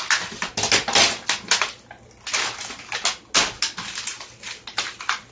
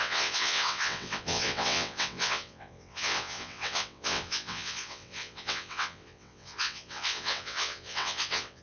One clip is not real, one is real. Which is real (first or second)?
first